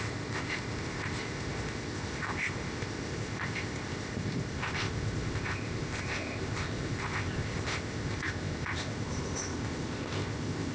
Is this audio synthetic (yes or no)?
yes